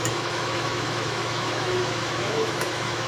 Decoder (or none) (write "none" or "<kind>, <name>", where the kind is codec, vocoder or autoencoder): autoencoder, DAC-VAE